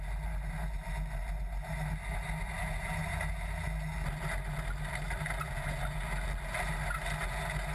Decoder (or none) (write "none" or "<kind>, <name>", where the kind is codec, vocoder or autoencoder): none